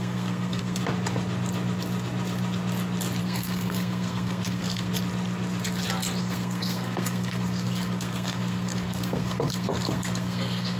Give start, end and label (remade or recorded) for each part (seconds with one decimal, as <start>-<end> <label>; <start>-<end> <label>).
0.0-0.8 remade; 0.8-3.2 recorded; 3.2-4.9 remade; 4.9-6.2 recorded; 6.2-10.8 remade